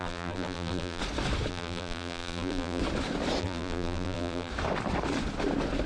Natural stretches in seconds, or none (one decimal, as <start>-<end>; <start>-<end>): 1.0-1.5; 2.8-3.4; 4.5-5.9